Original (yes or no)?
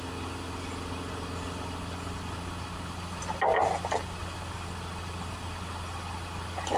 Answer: yes